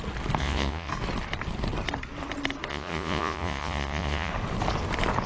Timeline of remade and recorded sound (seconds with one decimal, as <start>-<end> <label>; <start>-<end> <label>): 0.0-0.4 recorded; 0.4-0.9 remade; 0.9-2.7 recorded; 2.7-4.3 remade; 4.3-5.3 recorded